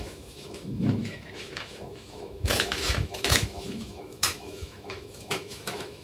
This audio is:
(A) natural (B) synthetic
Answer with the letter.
B